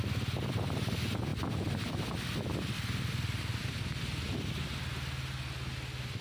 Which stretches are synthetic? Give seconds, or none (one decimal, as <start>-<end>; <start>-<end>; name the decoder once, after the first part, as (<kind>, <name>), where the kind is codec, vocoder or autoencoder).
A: none